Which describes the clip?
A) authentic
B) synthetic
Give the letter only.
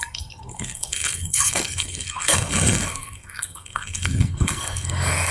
B